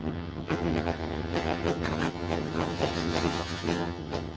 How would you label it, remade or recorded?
remade